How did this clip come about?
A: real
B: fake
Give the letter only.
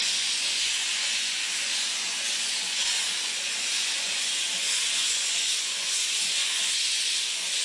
B